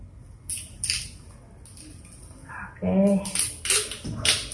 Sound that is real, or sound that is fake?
real